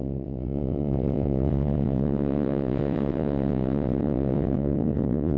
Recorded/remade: remade